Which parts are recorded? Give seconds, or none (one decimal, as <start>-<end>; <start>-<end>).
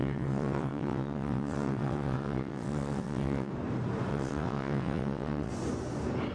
3.5-4.1; 5.5-6.3